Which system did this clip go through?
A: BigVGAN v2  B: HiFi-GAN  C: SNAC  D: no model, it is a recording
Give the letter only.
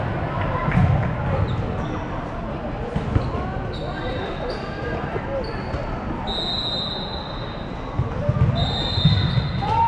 D